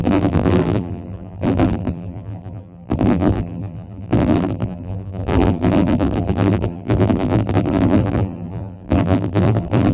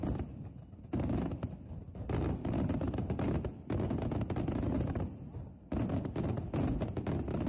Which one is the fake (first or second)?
first